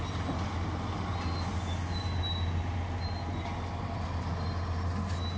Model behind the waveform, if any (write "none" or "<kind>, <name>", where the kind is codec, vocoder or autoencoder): none